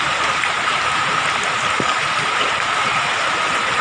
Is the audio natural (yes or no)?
no